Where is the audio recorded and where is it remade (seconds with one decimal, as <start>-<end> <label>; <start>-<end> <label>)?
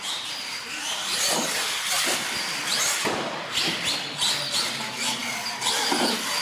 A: 0.0-6.4 recorded